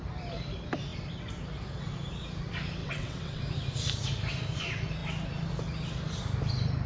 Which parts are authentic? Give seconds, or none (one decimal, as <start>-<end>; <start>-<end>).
0.0-2.8; 3.4-6.9